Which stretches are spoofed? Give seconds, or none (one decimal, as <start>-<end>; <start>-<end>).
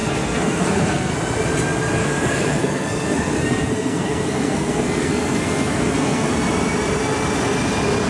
0.0-1.1; 2.0-6.3